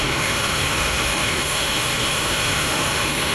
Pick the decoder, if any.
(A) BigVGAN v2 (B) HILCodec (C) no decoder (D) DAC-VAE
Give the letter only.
D